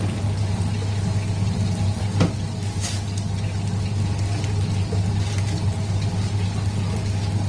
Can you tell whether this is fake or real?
real